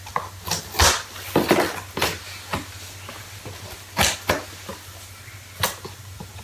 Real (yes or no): yes